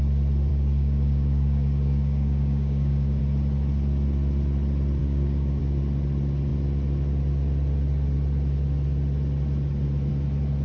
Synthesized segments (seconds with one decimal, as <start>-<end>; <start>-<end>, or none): 0.5-3.2; 5.0-5.6